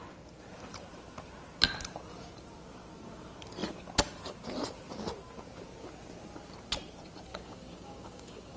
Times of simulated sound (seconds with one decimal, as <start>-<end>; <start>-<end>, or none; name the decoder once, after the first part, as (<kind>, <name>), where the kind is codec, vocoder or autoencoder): 7.3-8.6 (codec, DAC)